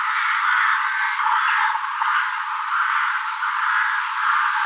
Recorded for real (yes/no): yes